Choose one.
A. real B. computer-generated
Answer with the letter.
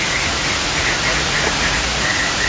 B